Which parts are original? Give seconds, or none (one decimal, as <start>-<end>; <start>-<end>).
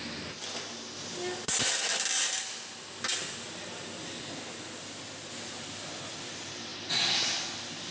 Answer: 0.0-7.9